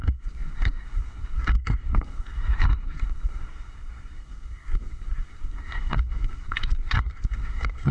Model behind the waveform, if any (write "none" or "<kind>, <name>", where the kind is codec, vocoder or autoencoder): codec, SNAC